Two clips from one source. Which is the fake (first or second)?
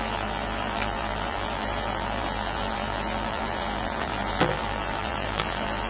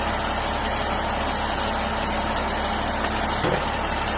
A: first